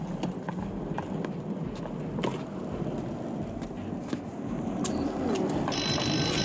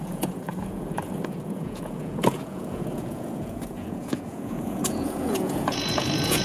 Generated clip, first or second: second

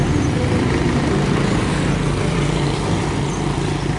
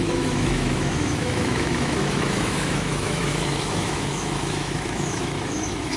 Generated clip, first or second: second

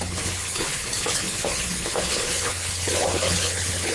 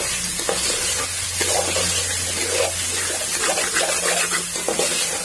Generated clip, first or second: first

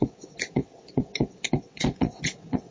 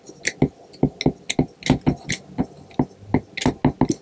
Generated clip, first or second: first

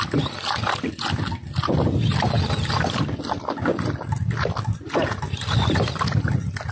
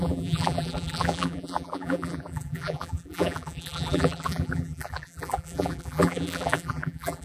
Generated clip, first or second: second